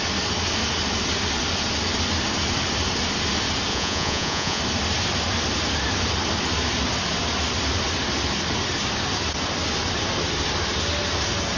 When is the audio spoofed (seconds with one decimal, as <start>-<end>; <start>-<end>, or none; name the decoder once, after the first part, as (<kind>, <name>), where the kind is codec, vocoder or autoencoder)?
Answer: 3.7-4.6 (vocoder, Vocos)